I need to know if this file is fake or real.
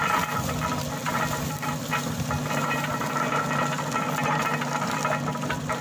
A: real